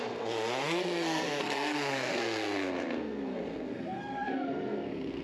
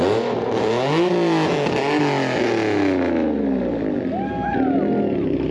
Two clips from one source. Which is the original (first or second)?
second